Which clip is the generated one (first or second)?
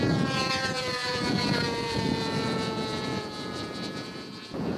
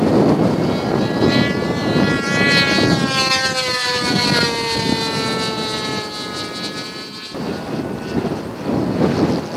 first